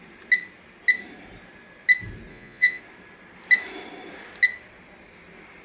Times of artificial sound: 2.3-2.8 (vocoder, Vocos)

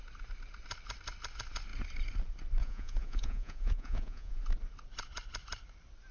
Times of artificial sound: 2.6-4.4 (vocoder, Vocos)

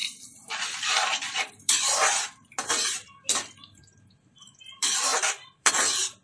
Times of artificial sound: 0.0-6.2 (vocoder, BigVGAN v2)

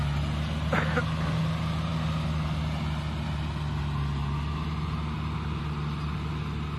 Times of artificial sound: none

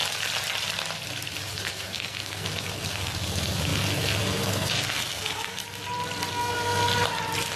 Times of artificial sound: 1.5-5.6 (codec, SNAC); 6.3-6.9

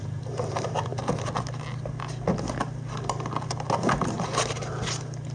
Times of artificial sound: 0.0-0.9 (vocoder, BigVGAN v2); 3.9-5.3